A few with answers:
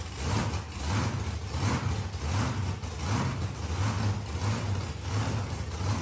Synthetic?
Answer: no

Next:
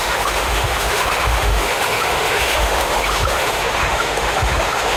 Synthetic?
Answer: yes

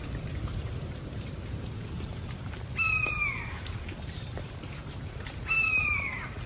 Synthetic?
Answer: yes